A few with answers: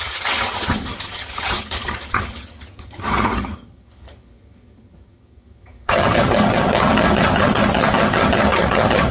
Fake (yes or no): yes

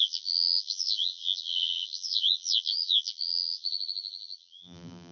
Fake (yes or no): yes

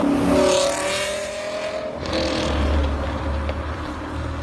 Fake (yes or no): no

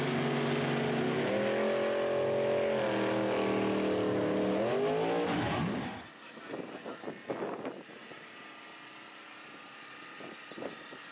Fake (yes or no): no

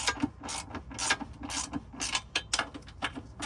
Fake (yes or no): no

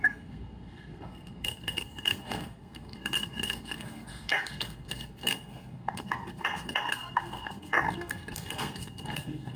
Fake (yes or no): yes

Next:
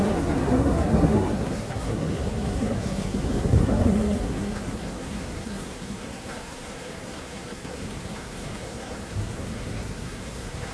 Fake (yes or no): yes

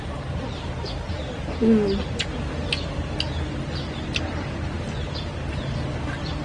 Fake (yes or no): no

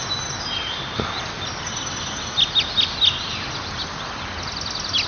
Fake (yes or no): no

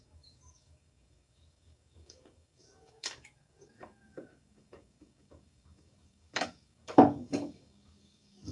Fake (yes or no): yes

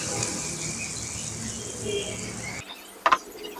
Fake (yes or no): no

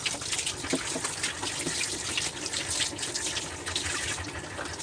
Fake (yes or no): no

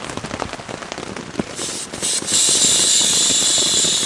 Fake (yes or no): no